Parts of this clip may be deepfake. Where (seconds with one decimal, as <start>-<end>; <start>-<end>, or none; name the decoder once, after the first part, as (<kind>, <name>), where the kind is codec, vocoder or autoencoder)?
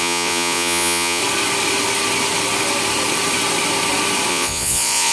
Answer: 0.0-1.2 (vocoder, Vocos); 4.3-5.1